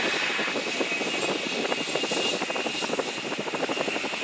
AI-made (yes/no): no